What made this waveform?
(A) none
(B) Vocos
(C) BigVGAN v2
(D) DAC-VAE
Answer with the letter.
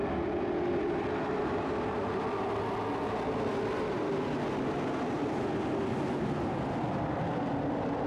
A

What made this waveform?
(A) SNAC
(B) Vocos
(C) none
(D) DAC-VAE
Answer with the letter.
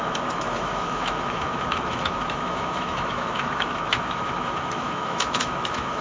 D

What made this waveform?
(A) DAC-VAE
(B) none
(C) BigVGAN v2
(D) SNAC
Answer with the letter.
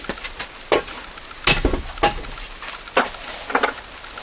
B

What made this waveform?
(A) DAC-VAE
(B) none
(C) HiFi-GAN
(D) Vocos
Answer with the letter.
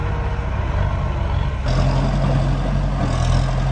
B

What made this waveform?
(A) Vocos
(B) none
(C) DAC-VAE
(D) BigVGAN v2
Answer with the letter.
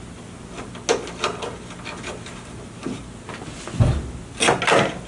B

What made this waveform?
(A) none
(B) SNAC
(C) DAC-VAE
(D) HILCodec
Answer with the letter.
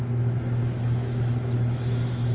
C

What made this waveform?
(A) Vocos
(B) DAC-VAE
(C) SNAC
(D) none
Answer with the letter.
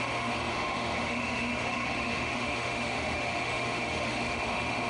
B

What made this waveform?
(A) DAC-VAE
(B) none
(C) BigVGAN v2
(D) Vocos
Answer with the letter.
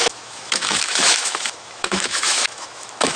A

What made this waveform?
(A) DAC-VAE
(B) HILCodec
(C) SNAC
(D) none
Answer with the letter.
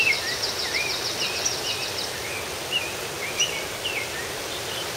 D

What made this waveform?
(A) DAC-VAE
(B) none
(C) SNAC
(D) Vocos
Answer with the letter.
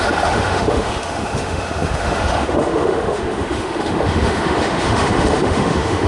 A